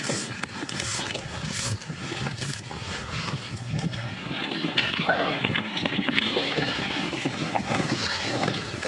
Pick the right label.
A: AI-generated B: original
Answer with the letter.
A